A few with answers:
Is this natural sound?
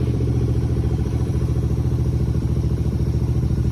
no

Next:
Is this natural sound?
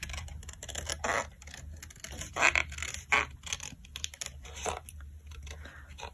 yes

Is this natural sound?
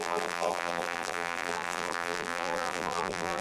no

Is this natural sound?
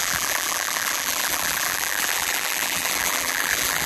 no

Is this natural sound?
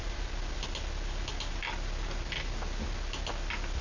yes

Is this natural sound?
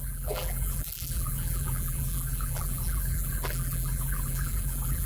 no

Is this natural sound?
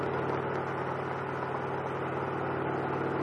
yes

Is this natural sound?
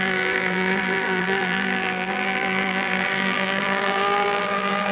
no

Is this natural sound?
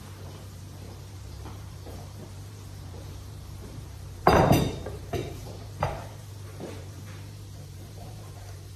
no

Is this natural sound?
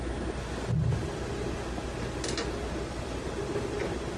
yes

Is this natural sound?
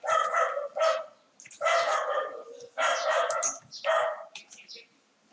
yes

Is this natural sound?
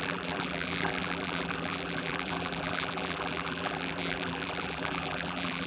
no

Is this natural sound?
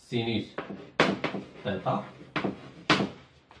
yes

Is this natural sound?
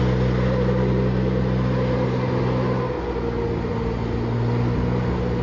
yes